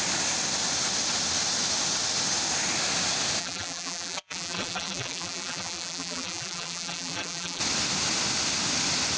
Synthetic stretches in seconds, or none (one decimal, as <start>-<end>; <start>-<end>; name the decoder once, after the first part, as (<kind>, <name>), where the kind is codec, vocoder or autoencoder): 3.4-7.6 (vocoder, BigVGAN v2)